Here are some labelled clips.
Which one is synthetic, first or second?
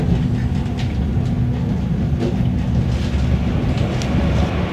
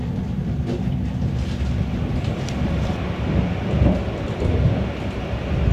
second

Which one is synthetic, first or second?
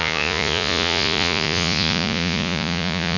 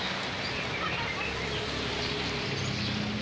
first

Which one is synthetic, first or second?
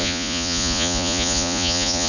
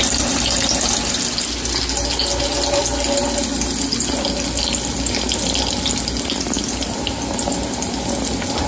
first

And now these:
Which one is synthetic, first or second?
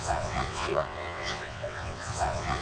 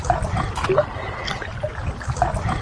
first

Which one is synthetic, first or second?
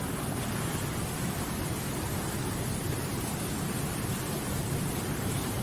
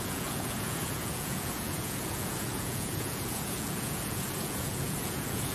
second